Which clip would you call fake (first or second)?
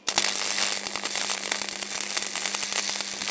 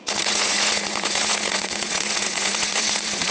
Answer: second